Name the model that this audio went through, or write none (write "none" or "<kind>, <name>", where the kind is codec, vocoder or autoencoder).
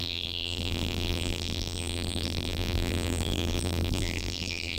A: vocoder, BigVGAN v2